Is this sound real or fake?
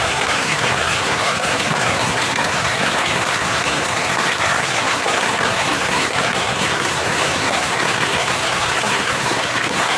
fake